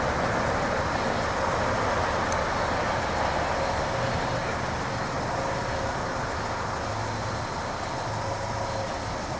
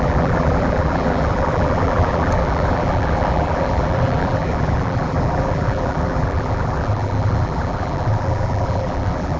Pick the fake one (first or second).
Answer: second